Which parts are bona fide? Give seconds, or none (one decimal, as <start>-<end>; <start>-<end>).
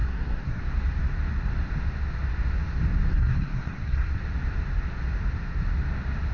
0.6-3.1; 4.2-6.3